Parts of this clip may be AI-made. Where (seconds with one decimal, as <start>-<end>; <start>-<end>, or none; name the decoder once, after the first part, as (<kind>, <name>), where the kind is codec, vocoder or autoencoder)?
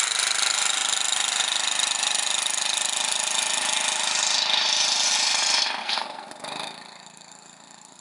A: 5.8-8.0 (codec, SNAC)